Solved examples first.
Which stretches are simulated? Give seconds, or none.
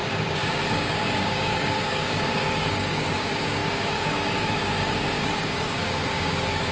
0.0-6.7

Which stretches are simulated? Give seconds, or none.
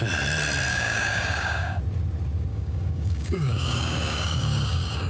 0.7-1.8; 2.5-5.1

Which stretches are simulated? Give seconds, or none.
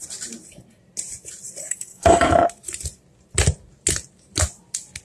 1.6-2.3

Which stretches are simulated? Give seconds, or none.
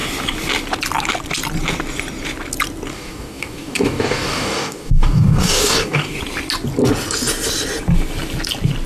2.9-6.2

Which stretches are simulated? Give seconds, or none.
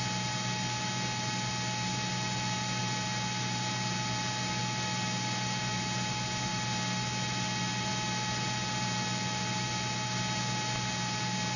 none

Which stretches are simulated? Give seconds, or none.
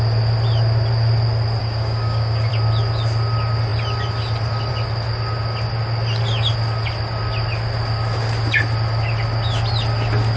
1.6-2.5